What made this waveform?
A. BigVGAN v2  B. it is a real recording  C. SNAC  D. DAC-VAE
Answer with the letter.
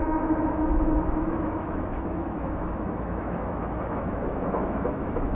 D